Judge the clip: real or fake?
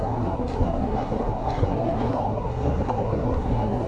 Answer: fake